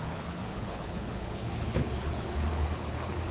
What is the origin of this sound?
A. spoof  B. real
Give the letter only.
A